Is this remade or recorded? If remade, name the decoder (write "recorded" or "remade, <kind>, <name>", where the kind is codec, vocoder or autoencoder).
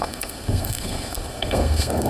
remade, codec, SNAC